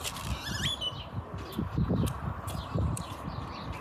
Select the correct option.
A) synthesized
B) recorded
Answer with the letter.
B